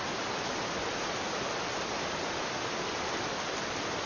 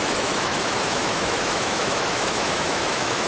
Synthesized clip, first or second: second